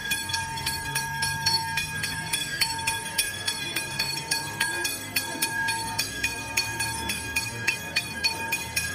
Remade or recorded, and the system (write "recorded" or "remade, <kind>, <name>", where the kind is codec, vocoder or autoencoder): remade, codec, SNAC